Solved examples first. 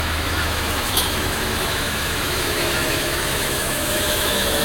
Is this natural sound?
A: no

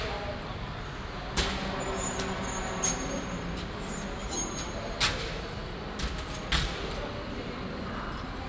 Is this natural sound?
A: yes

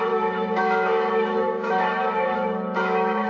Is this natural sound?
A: no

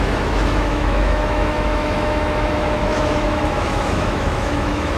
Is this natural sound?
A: no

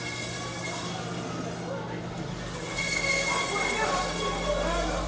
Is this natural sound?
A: yes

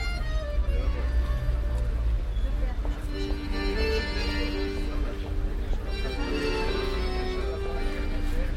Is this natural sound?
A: yes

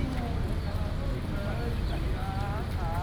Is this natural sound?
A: yes